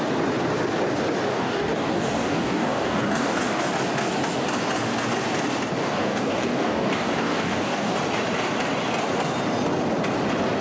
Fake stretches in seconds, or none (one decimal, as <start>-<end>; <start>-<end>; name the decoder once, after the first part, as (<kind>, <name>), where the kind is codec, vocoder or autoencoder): 1.3-3.6 (codec, DAC); 5.8-7.9